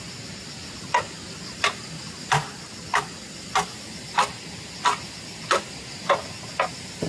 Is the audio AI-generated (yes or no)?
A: no